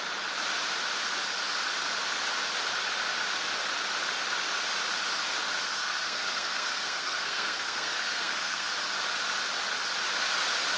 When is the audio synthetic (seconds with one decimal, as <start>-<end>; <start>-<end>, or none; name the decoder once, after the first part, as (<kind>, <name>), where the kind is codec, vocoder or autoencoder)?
5.8-8.7 (codec, SNAC)